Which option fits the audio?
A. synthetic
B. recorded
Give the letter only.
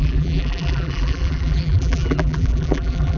A